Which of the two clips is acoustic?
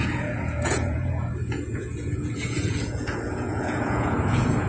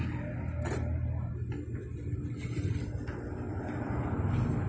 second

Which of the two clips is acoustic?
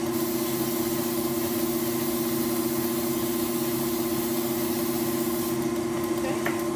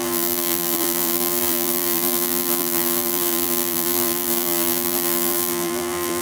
first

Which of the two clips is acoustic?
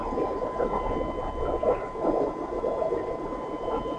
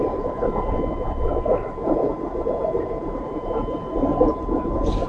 first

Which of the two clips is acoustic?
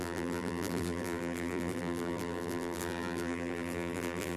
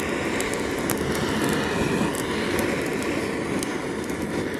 second